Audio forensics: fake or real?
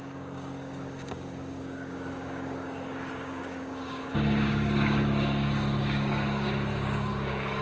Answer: fake